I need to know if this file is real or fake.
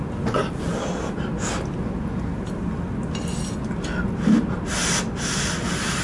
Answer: real